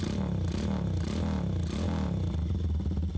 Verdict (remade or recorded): recorded